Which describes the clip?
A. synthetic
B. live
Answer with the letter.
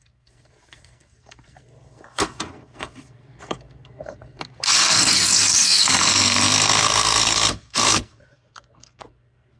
A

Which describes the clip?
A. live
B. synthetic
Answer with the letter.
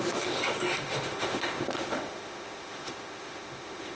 B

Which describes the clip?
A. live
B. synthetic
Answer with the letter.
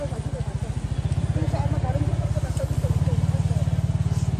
A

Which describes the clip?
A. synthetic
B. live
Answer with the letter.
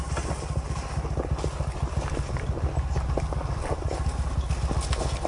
B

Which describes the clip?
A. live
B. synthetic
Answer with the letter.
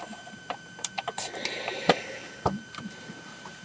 B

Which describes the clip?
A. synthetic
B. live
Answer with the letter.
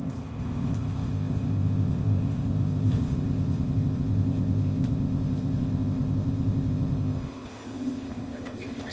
A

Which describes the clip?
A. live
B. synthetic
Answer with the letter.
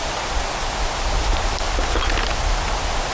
A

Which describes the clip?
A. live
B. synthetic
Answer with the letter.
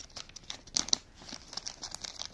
A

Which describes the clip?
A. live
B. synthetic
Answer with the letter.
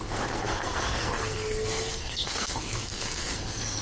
B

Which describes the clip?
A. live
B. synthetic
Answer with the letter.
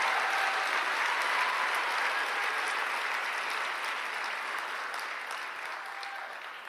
A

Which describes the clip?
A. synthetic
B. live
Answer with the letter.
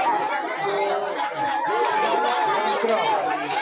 B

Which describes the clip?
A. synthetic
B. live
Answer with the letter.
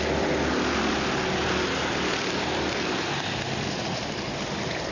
B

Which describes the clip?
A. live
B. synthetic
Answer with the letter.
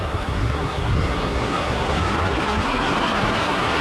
B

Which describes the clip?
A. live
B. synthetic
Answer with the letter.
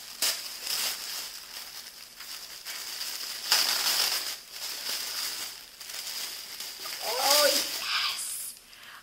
A